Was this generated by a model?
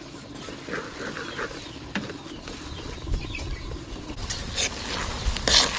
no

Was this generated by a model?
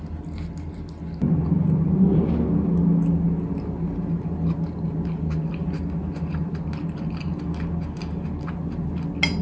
no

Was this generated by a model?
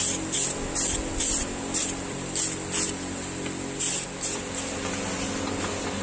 no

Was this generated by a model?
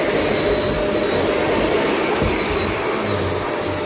no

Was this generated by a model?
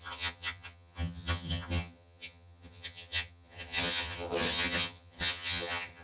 yes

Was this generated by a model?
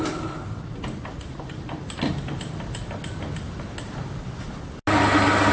no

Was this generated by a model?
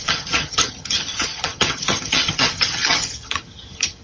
yes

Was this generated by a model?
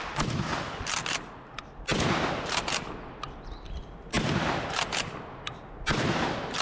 no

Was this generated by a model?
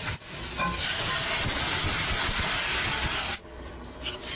no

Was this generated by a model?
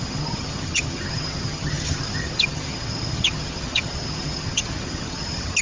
yes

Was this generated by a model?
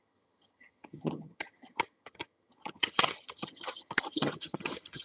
yes